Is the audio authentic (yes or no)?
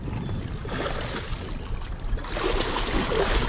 yes